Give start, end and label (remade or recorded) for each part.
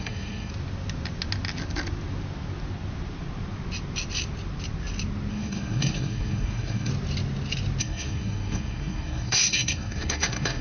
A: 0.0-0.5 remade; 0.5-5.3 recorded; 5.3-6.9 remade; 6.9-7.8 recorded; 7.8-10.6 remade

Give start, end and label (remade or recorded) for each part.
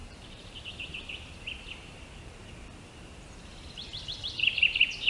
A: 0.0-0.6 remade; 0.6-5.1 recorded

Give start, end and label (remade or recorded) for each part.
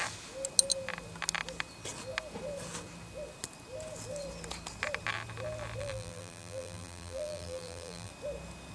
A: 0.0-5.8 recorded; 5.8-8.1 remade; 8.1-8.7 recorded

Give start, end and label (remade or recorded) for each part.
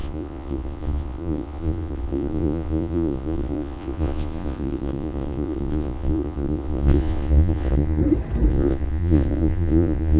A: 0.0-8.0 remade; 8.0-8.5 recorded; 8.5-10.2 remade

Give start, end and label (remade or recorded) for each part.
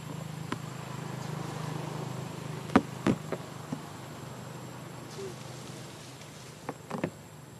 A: 0.0-7.6 recorded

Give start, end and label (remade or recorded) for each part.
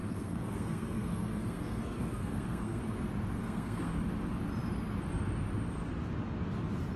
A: 0.0-2.8 remade; 2.8-3.4 recorded; 3.4-3.9 remade; 3.9-7.0 recorded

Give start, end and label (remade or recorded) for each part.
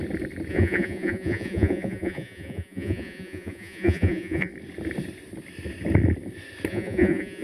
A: 0.0-0.5 recorded; 0.5-4.5 remade; 4.5-6.7 recorded; 6.7-7.4 remade